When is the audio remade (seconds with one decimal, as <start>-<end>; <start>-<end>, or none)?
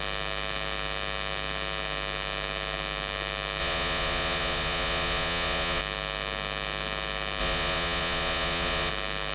3.6-5.8; 7.4-8.9